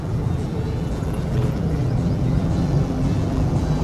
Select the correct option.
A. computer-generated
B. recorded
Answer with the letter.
A